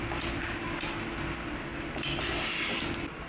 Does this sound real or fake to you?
real